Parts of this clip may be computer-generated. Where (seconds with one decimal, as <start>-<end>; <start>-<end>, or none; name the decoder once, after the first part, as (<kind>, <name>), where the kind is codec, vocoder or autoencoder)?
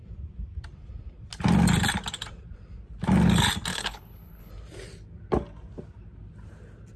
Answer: 3.7-4.5 (codec, HILCodec)